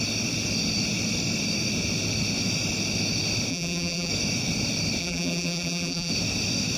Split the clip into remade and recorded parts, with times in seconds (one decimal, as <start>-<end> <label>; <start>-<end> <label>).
0.0-3.5 recorded; 3.5-4.1 remade; 4.1-5.0 recorded; 5.0-6.1 remade; 6.1-6.8 recorded